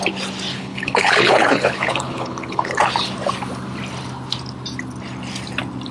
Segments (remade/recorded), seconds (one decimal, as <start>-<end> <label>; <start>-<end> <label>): 0.0-0.5 recorded; 0.5-2.9 remade; 2.9-5.9 recorded